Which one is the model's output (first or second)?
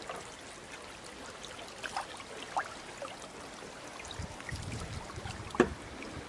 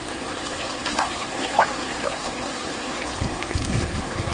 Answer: second